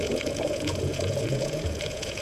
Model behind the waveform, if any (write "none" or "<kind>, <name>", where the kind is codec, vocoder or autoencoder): vocoder, Vocos